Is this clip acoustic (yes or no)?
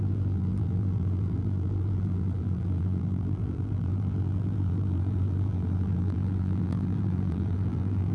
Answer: no